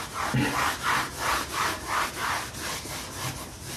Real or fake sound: real